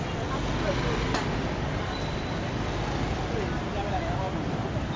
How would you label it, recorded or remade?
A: recorded